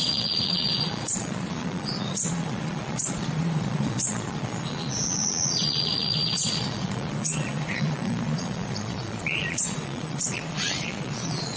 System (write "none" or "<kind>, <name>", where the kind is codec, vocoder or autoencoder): vocoder, Vocos